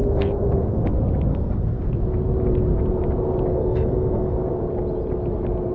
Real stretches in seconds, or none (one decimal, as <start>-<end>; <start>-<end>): 0.9-1.3; 1.9-3.5; 4.5-5.7